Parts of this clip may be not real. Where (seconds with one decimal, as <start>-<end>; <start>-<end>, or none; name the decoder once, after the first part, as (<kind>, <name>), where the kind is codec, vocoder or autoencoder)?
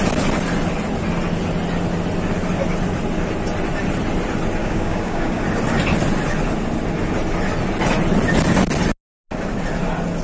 4.6-5.4 (codec, DAC)